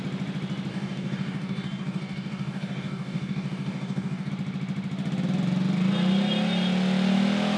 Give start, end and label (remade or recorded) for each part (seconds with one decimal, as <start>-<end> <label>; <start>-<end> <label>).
0.0-0.7 recorded; 0.7-4.3 remade; 4.3-7.6 recorded